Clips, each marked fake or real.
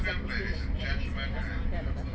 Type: real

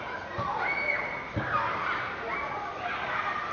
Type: real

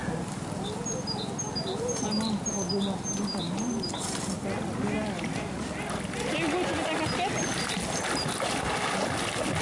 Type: real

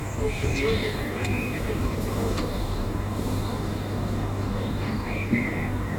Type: fake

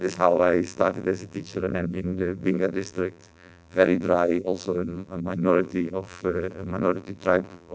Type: fake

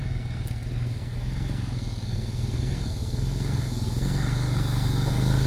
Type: fake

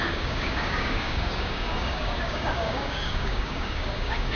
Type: fake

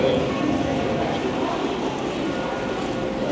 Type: real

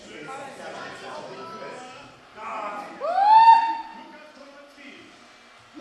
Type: real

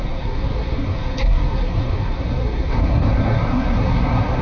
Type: fake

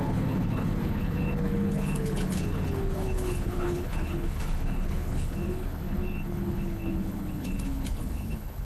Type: fake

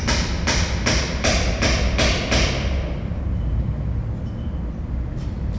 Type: real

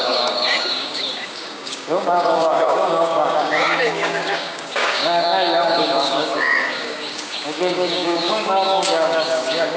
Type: fake